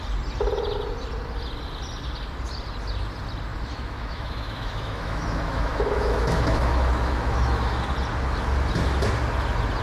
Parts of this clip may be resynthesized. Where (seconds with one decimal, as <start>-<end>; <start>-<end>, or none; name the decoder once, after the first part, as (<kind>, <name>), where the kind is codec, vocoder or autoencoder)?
3.5-7.8 (autoencoder, DAC-VAE)